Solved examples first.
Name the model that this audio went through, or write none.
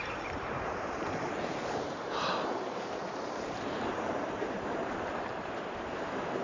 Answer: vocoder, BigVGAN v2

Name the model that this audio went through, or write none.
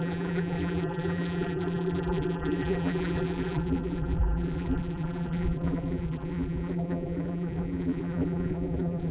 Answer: vocoder, BigVGAN v2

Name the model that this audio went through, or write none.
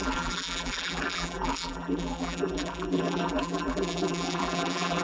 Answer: vocoder, BigVGAN v2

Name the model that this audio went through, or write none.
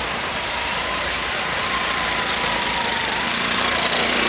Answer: vocoder, BigVGAN v2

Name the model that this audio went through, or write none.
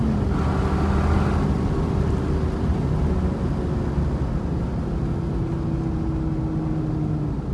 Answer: none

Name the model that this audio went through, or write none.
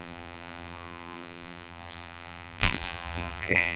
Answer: vocoder, BigVGAN v2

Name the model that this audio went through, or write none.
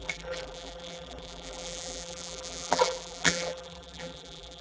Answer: vocoder, BigVGAN v2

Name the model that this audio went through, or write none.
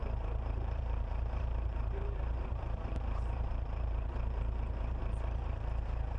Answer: vocoder, BigVGAN v2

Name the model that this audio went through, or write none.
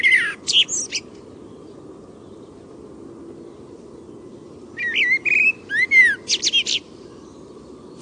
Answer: none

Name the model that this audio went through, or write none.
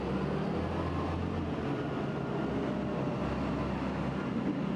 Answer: none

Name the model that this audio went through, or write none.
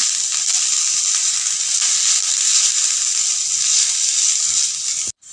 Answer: none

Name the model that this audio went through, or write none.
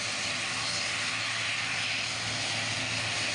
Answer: none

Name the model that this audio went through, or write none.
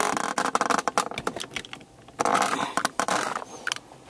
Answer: none